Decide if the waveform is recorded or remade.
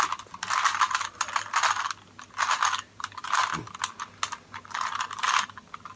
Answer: recorded